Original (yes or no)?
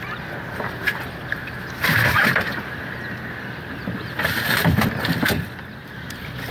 no